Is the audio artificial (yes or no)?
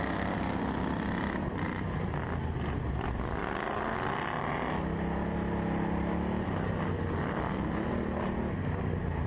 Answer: no